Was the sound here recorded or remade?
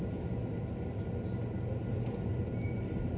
recorded